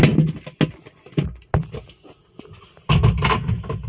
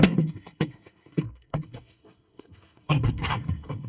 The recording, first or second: first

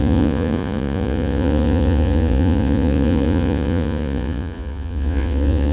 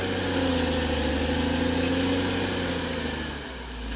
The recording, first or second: second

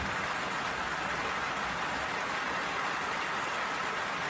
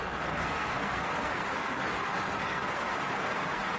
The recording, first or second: first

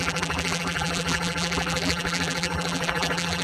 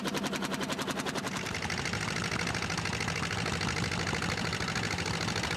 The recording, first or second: second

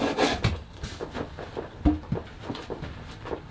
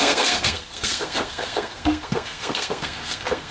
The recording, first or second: first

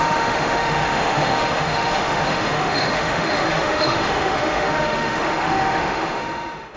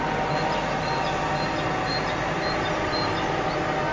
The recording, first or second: second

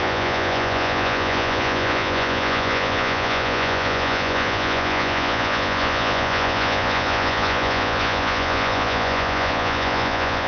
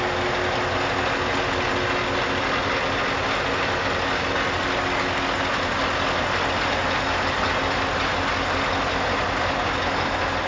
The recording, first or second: second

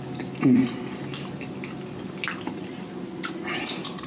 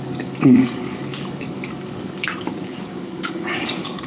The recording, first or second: first